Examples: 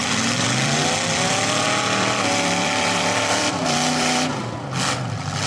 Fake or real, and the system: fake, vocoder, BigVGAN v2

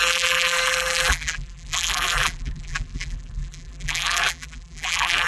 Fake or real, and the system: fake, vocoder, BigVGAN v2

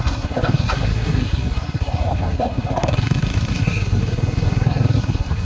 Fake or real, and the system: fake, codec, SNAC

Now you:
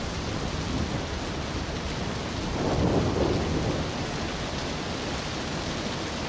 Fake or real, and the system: real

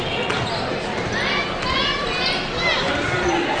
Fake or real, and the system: real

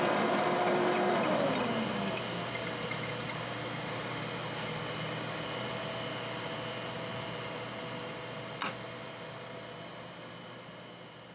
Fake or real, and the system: real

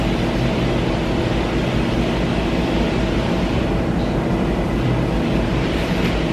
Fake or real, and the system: fake, vocoder, BigVGAN v2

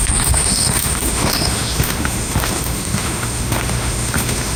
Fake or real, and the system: fake, autoencoder, DAC-VAE